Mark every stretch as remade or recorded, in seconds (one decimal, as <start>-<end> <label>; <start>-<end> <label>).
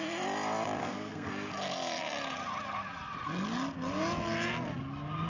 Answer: 0.0-0.8 recorded; 0.8-1.3 remade; 1.3-5.3 recorded